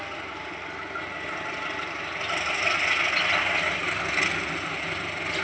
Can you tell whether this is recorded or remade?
recorded